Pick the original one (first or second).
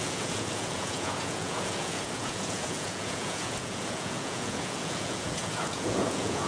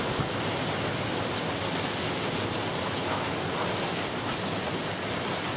second